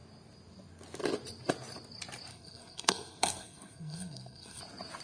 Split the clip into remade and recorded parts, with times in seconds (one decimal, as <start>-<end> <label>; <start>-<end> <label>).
0.0-2.3 recorded; 2.3-4.6 remade; 4.6-5.0 recorded